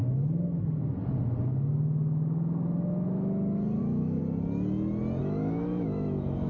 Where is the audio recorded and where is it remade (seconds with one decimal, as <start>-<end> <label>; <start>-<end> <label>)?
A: 0.0-3.8 recorded; 3.8-4.2 remade; 4.2-5.2 recorded; 5.2-6.5 remade